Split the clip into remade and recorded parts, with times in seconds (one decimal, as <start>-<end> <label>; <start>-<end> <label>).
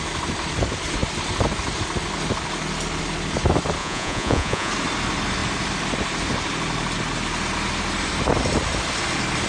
0.0-3.8 recorded; 3.8-4.7 remade; 4.7-9.5 recorded